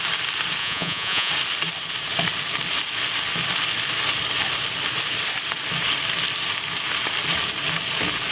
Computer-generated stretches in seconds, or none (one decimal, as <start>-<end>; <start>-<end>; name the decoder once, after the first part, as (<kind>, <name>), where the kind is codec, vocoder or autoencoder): 0.6-1.3 (vocoder, Vocos)